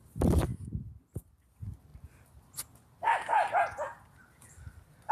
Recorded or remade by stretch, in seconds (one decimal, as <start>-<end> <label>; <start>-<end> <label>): 0.0-5.1 recorded